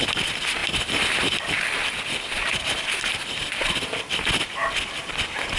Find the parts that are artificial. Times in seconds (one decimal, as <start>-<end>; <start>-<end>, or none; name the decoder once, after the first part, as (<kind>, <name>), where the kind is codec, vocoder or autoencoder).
none